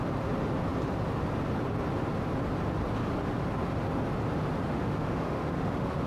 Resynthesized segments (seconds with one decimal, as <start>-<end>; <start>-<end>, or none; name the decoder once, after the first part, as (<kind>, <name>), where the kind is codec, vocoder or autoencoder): 4.7-6.1 (autoencoder, DAC-VAE)